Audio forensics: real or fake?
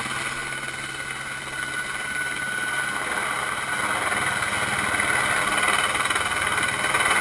real